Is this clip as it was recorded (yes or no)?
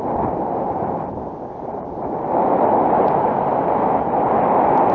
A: yes